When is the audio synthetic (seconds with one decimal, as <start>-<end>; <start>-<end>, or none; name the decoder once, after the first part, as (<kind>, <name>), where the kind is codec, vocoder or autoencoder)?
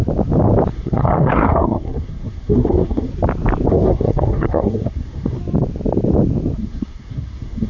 0.7-3.1 (codec, SNAC); 3.7-5.4; 6.6-7.7